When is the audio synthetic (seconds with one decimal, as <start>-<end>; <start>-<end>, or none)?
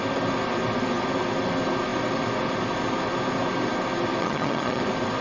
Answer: 4.2-4.8